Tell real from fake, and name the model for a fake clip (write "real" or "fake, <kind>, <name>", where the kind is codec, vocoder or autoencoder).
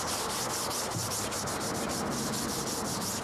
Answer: real